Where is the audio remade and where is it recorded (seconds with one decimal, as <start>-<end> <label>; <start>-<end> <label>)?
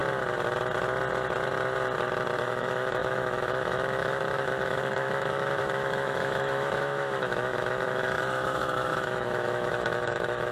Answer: 0.0-2.5 recorded; 2.5-10.5 remade